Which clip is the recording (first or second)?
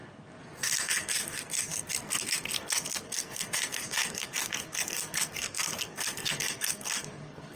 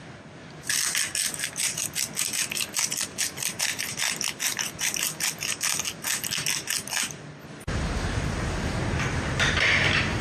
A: second